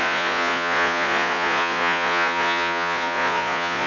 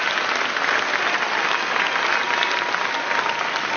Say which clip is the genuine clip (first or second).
second